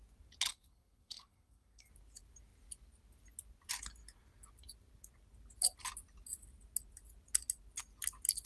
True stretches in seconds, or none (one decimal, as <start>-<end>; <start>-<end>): 0.0-0.5; 1.9-8.5